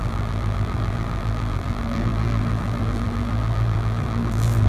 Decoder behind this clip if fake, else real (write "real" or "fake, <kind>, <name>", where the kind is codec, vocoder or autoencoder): fake, vocoder, BigVGAN v2